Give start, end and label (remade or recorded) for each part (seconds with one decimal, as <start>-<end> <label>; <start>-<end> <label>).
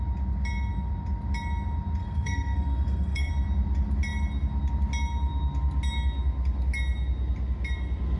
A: 0.0-2.0 recorded; 2.0-3.3 remade; 3.3-8.2 recorded